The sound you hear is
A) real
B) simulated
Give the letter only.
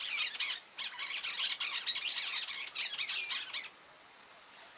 A